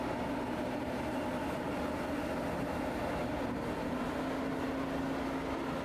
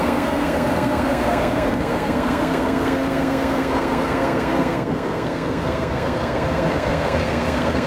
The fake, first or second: second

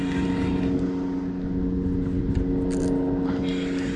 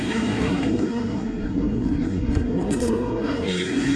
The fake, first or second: second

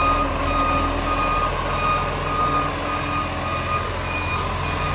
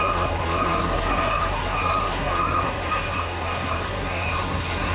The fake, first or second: second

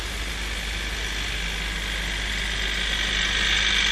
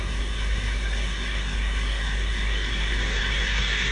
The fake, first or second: second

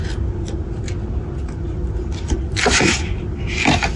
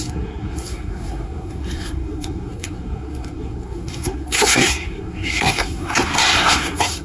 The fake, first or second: second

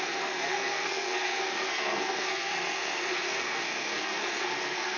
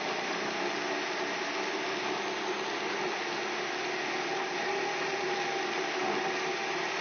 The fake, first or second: first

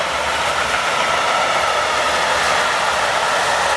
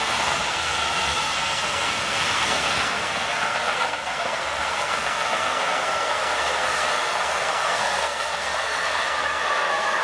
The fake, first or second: second